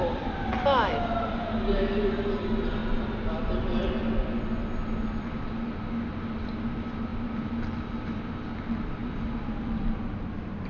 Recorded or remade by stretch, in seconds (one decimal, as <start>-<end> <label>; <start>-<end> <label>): 0.0-2.8 recorded; 2.8-3.8 remade; 3.8-7.1 recorded; 7.1-7.8 remade; 7.8-9.0 recorded; 9.0-10.0 remade; 10.0-10.7 recorded